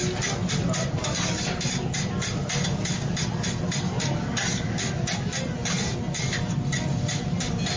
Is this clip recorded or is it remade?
recorded